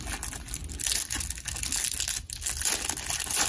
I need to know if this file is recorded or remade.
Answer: recorded